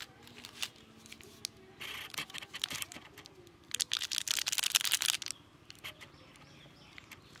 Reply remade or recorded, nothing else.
recorded